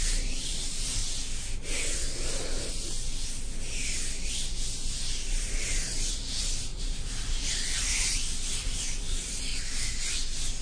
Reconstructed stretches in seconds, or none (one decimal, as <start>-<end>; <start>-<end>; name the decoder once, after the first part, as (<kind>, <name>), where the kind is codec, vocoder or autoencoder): 0.0-1.0 (vocoder, BigVGAN v2); 5.3-9.5